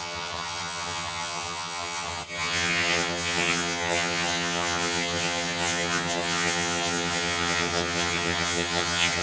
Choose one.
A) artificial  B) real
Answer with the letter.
A